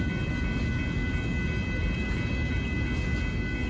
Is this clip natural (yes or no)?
yes